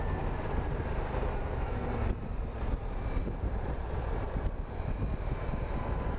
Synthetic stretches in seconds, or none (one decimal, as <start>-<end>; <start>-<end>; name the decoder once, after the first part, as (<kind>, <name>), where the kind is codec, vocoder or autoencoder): 3.2-4.1 (vocoder, BigVGAN v2)